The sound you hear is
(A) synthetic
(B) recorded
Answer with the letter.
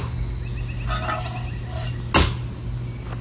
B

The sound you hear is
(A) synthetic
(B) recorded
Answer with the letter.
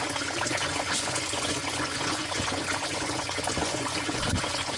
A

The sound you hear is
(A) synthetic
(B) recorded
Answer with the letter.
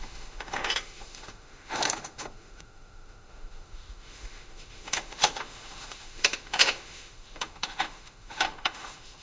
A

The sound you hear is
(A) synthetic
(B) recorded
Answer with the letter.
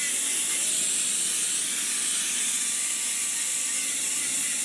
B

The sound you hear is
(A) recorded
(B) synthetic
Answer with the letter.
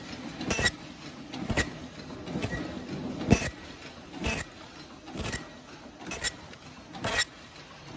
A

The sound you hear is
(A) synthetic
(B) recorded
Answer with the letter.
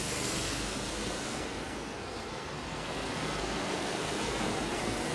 A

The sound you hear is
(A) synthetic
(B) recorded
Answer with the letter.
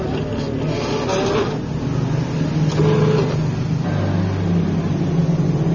B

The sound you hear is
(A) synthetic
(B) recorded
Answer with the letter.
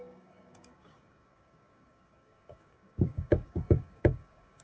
A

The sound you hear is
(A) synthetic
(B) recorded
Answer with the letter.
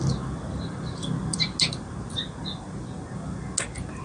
B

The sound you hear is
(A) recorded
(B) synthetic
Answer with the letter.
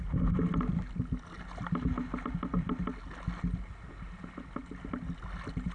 A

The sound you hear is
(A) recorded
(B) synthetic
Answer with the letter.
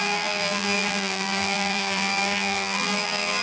B